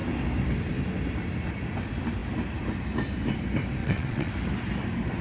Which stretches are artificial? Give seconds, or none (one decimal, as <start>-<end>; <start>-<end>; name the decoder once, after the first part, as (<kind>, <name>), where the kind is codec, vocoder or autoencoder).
3.8-4.3 (vocoder, WaveNeXt)